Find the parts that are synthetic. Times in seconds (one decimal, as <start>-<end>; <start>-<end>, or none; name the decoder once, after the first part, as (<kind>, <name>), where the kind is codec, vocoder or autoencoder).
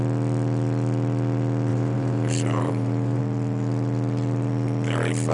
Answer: 1.7-3.2 (vocoder, BigVGAN v2)